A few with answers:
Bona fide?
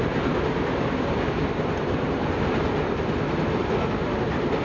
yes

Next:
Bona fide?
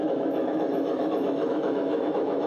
no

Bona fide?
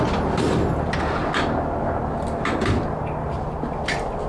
yes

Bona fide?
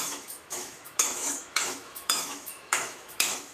no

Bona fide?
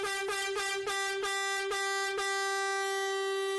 yes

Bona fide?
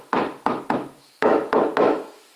no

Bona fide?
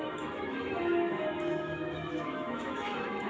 no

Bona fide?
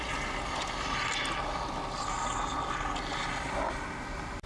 yes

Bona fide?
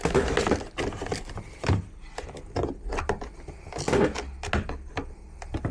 yes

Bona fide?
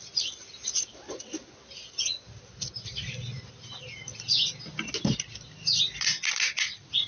yes